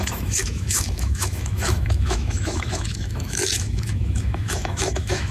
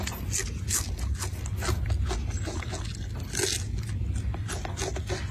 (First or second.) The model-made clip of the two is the first